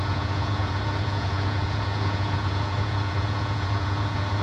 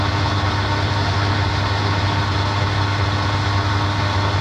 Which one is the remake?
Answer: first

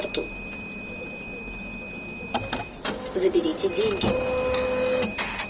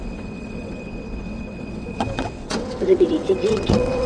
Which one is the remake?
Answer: second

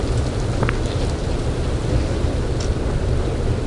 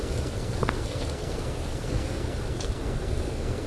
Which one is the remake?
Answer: second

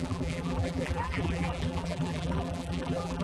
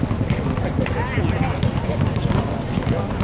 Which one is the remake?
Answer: first